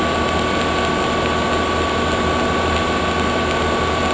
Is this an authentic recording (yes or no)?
yes